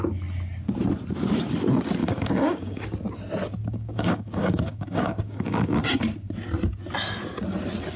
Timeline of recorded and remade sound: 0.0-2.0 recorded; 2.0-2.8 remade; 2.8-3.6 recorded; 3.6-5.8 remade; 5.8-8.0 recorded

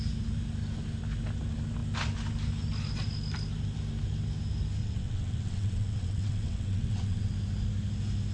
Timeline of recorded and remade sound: 0.0-4.8 recorded; 4.8-7.3 remade; 7.3-8.3 recorded

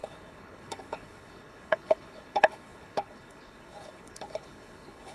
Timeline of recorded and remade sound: 0.0-5.1 remade